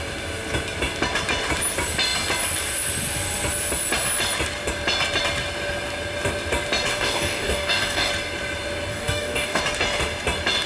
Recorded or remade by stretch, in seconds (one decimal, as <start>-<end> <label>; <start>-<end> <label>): 0.0-6.9 recorded; 6.9-8.1 remade; 8.1-8.9 recorded; 8.9-9.6 remade; 9.6-10.7 recorded